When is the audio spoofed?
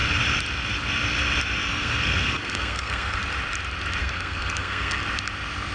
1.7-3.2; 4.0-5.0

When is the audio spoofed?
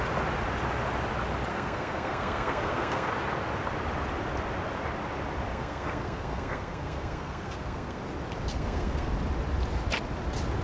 1.5-3.1; 5.5-8.0; 8.5-9.1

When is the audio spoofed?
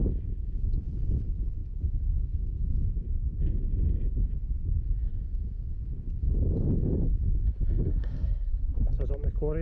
7.9-9.0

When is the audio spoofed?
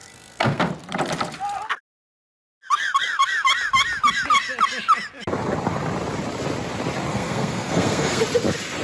0.0-0.7; 7.1-8.2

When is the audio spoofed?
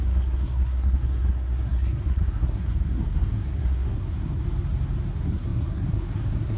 0.0-4.4; 5.1-6.6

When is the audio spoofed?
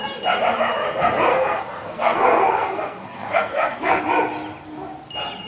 1.3-4.0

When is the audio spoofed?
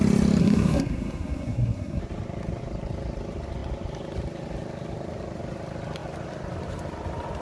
0.4-2.0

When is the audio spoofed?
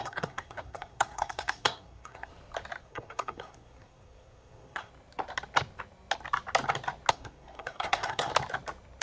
0.0-2.3; 2.8-4.9; 7.1-8.3